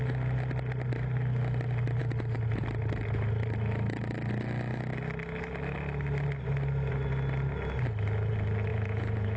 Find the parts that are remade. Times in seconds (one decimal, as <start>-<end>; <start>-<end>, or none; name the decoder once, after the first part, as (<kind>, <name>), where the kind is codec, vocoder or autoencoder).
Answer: 8.7-9.4 (vocoder, Vocos)